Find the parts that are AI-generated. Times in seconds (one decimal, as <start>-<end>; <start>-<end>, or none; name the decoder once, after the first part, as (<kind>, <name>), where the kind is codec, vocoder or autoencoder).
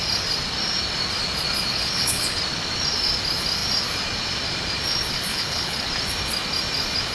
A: 1.7-2.4 (codec, HILCodec); 5.3-5.9